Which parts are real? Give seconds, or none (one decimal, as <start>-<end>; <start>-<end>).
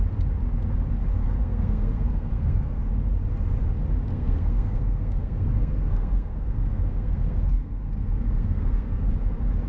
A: 0.0-1.2; 2.8-4.1; 9.1-9.7